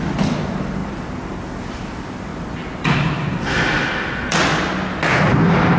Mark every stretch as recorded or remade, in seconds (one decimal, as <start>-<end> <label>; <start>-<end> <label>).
0.0-5.8 recorded